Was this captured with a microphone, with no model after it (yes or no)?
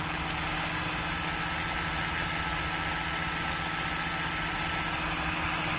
yes